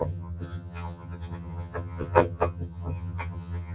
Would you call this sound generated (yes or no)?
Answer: yes